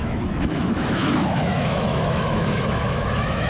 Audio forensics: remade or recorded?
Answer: remade